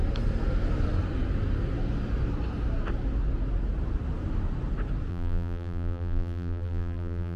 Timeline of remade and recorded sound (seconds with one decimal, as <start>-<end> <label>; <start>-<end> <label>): 0.0-5.1 recorded; 5.1-7.4 remade